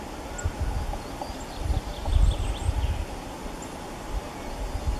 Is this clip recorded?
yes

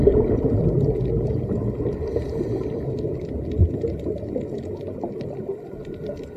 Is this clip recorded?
yes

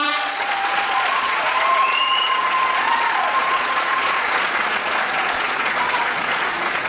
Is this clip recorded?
no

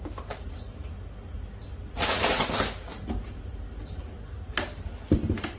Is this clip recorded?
yes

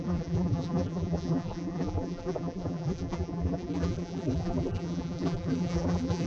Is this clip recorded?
no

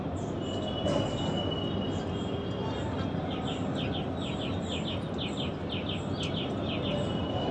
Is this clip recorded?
yes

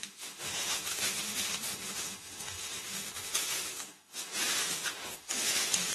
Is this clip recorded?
no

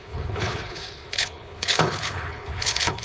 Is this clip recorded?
no